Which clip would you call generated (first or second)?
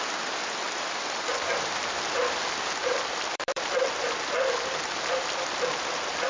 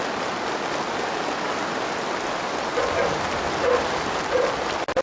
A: first